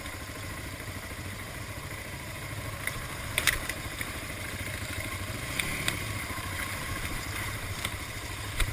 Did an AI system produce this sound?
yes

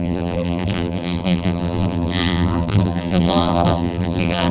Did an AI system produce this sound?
yes